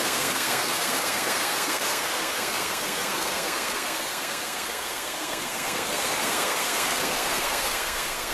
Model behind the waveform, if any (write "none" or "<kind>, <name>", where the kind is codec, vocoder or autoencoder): codec, SNAC